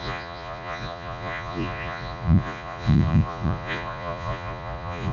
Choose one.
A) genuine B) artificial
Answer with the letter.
B